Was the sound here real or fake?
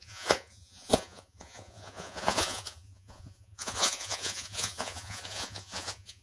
fake